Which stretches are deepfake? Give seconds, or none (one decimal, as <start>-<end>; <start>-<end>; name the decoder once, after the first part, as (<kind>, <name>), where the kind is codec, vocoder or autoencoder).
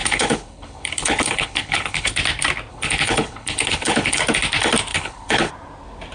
0.0-2.1 (codec, HILCodec); 2.7-4.2; 4.9-5.5